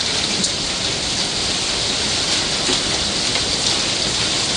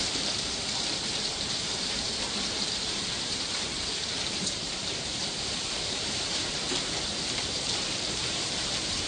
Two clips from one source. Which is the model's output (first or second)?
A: second